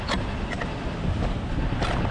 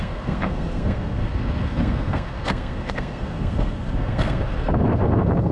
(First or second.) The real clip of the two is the first